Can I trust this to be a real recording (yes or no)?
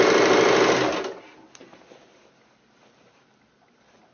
yes